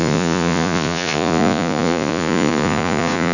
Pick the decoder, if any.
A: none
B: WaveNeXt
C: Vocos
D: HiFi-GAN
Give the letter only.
C